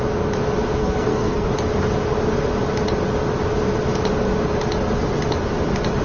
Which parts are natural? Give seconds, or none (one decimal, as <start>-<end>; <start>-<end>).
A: 0.0-0.8; 1.5-6.0